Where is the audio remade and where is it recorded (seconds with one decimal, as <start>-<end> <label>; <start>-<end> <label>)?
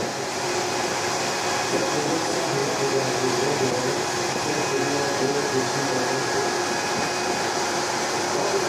0.0-8.7 recorded